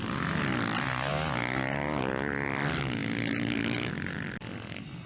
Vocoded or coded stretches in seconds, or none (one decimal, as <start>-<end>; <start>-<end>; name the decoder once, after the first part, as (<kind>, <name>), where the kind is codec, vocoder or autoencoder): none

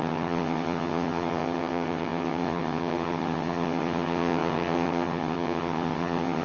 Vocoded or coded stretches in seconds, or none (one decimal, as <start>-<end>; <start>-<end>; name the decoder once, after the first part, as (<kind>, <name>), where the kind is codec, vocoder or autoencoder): 0.0-6.4 (vocoder, HiFi-GAN)

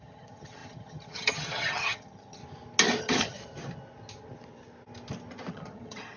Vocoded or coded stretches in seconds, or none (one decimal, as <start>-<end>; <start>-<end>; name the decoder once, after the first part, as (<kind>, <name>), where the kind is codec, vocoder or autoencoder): 0.0-2.4 (vocoder, HiFi-GAN); 3.0-3.4; 5.5-6.2

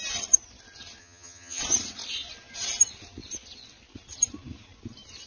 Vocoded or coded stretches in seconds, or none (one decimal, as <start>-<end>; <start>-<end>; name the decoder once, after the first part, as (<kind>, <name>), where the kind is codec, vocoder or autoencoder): 1.0-1.6 (vocoder, HiFi-GAN)